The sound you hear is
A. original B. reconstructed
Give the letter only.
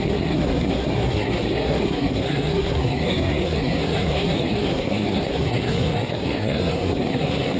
B